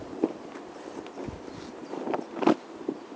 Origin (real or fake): real